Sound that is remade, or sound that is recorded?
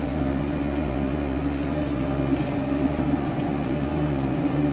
remade